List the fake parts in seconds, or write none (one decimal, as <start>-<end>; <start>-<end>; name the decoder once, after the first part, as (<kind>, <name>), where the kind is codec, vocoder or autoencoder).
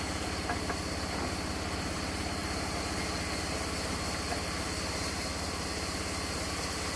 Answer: none